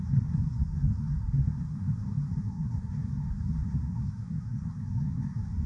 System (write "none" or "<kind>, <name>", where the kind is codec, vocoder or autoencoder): codec, SNAC